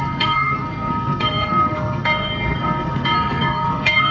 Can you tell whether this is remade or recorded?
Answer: remade